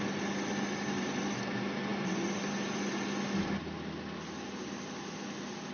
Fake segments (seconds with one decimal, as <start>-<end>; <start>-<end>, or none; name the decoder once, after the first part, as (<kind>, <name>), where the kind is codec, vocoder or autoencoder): none